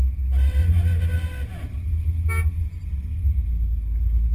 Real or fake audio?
real